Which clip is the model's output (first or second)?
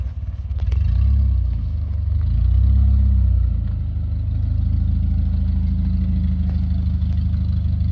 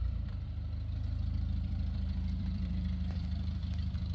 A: second